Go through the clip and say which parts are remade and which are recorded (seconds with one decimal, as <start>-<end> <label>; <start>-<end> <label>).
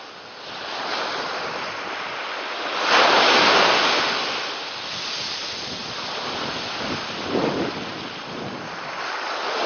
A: 0.0-9.7 recorded